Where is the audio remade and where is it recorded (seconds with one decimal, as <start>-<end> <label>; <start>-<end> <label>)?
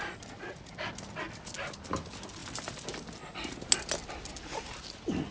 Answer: 0.0-5.3 recorded